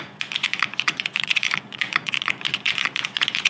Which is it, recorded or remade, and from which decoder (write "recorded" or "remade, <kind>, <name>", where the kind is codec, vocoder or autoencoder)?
remade, vocoder, Vocos